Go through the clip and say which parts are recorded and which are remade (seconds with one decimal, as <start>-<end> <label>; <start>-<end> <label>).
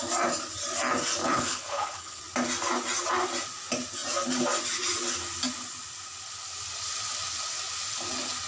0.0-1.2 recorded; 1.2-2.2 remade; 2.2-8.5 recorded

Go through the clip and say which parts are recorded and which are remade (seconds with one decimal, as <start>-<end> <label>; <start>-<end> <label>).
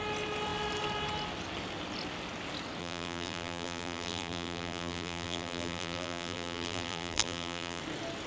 0.0-2.8 recorded; 2.8-7.8 remade; 7.8-8.3 recorded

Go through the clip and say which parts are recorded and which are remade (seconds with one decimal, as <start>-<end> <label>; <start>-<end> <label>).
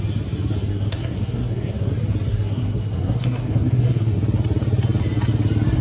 0.0-0.7 recorded; 0.7-1.9 remade; 1.9-2.3 recorded; 2.3-4.2 remade; 4.2-5.8 recorded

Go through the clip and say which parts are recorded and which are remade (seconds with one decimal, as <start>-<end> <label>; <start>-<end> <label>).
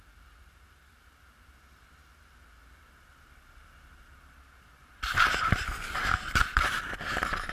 0.0-3.6 recorded; 3.6-5.6 remade; 5.6-7.5 recorded